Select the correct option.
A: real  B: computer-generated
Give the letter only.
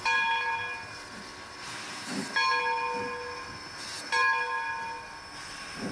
A